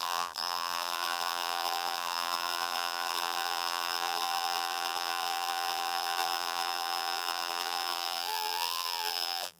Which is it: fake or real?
fake